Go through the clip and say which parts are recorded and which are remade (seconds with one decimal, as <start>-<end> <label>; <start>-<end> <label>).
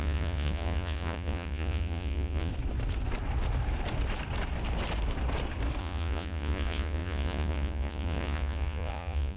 0.0-2.5 remade; 2.5-5.8 recorded; 5.8-9.4 remade